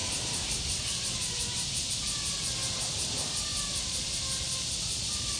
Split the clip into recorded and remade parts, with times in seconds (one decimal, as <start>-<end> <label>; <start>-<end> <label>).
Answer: 0.0-1.9 remade; 1.9-3.5 recorded; 3.5-4.2 remade; 4.2-5.4 recorded